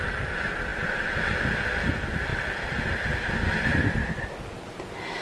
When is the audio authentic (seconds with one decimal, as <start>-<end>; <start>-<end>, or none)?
0.0-5.2